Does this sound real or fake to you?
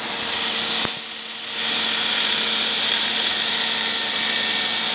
real